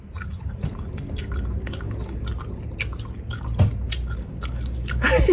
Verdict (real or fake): real